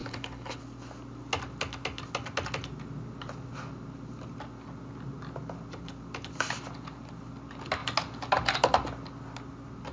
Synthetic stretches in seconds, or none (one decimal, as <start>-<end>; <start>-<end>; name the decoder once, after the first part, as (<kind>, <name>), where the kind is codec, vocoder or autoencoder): 0.0-0.6 (codec, HILCodec)